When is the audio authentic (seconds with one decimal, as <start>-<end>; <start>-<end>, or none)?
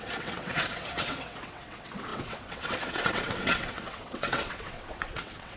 none